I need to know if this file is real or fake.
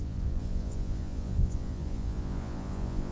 fake